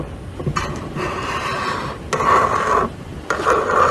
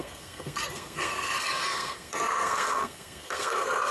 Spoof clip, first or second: second